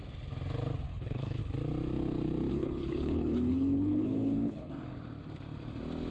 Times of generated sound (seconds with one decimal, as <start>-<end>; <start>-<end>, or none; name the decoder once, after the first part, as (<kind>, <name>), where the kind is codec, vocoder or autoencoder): 0.9-1.4 (codec, HILCodec); 2.5-4.7

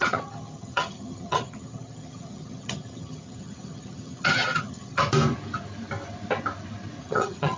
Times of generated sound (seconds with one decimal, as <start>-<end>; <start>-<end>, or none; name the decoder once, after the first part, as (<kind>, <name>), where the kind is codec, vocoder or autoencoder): 0.0-5.0 (vocoder, HiFi-GAN); 7.0-7.6

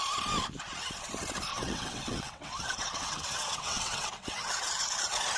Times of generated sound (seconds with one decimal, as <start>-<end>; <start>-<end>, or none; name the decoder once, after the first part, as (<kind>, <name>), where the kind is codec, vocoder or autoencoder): 1.5-4.7 (vocoder, WaveNeXt)